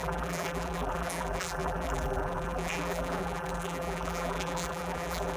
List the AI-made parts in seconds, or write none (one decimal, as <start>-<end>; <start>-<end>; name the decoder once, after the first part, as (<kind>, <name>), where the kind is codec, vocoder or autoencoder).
0.0-5.4 (vocoder, BigVGAN v2)